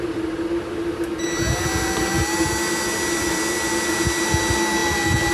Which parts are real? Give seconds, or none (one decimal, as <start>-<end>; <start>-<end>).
0.0-5.3